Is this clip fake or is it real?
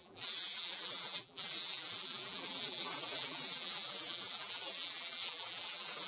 fake